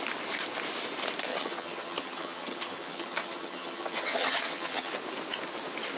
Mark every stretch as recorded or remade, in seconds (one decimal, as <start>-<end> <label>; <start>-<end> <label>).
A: 0.0-1.3 recorded; 1.3-4.9 remade; 4.9-6.0 recorded